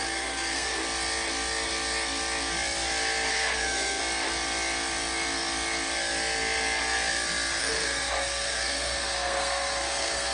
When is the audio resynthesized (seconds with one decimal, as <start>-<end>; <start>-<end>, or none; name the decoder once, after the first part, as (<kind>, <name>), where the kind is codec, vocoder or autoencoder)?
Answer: 0.0-0.8 (codec, SNAC); 3.3-4.0; 7.6-10.3